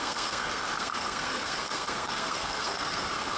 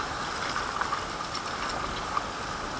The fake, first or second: first